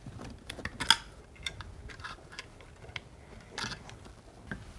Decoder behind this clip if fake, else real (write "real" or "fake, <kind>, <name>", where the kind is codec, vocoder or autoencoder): real